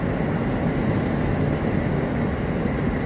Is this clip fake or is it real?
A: real